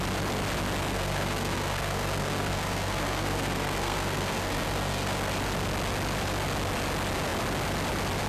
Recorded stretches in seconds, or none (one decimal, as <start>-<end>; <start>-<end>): 0.0-0.9; 5.3-8.3